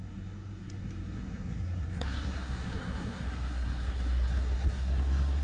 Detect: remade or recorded remade